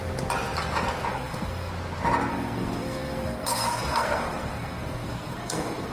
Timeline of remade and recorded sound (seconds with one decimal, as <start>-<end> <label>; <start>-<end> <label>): 0.0-1.1 recorded; 1.1-1.7 remade; 1.7-2.3 recorded; 2.3-5.9 remade